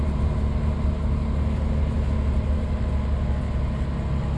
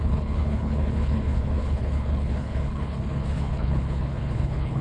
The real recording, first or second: first